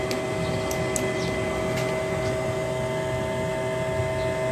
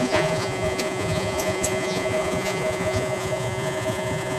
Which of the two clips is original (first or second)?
first